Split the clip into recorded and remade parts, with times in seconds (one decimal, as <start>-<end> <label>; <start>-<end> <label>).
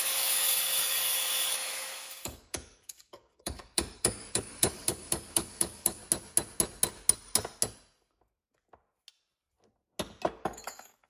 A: 0.0-6.0 remade; 6.0-10.3 recorded; 10.3-11.1 remade